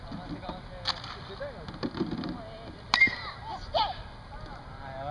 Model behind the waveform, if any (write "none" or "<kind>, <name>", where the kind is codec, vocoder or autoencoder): none